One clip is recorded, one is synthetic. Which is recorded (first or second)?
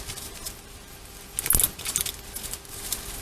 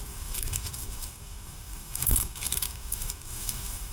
first